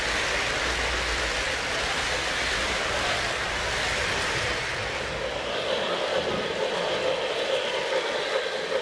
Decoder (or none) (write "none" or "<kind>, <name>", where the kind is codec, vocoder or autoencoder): none